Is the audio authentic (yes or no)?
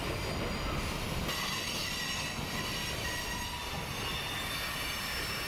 yes